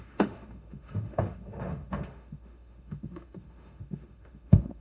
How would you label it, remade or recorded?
remade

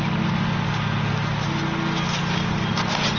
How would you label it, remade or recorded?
recorded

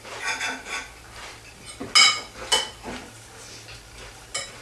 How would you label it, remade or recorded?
recorded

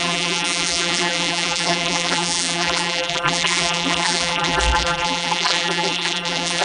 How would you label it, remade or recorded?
remade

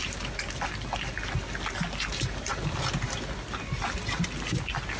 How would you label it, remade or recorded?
recorded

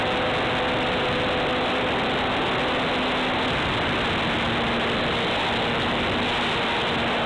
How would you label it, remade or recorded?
recorded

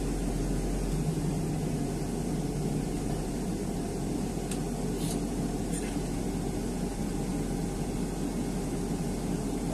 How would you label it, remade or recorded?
recorded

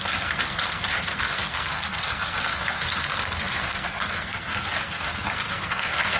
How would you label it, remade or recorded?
remade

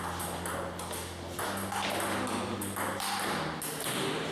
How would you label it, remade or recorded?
recorded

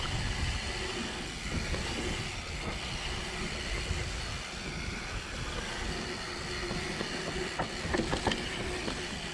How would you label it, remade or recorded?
recorded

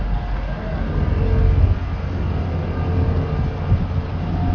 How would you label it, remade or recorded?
recorded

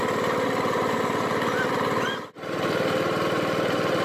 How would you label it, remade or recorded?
recorded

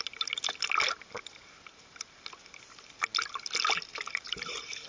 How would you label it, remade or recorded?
recorded